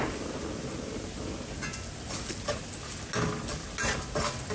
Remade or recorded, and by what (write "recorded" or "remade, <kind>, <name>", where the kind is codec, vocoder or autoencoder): recorded